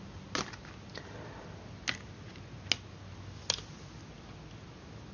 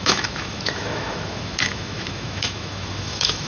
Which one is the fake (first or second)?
second